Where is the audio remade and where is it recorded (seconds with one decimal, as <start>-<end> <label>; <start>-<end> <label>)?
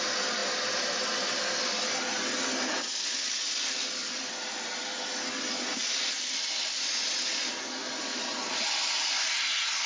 0.0-4.0 recorded; 4.0-5.0 remade; 5.0-5.8 recorded; 5.8-9.3 remade; 9.3-9.9 recorded